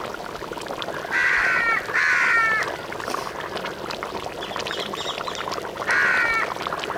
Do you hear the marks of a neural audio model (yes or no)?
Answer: no